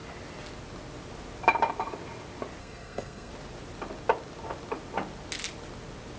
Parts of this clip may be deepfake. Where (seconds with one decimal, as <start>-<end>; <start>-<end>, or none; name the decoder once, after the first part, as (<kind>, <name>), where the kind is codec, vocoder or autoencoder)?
2.6-3.3 (codec, SNAC)